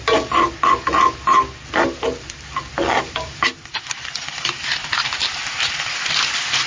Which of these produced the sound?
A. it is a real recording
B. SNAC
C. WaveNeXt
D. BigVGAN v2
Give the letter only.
A